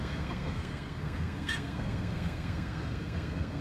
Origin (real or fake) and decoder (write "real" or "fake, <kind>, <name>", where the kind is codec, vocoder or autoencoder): fake, codec, SNAC